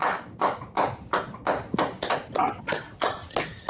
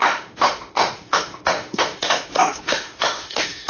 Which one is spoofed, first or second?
second